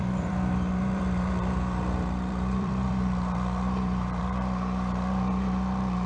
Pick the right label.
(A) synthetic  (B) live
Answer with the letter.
A